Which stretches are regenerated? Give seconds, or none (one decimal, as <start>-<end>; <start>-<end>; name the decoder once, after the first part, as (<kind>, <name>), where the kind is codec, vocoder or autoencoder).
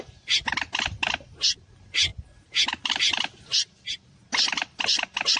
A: none